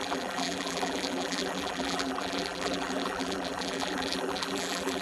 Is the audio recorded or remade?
remade